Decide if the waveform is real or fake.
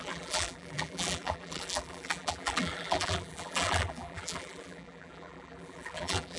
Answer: fake